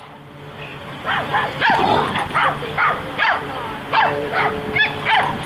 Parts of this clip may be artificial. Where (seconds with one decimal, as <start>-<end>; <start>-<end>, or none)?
0.7-1.8; 2.4-4.5